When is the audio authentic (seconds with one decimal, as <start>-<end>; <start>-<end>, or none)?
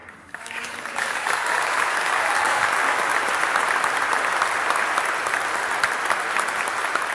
3.1-7.1